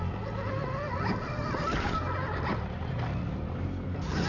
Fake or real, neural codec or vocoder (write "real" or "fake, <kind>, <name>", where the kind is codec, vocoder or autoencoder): real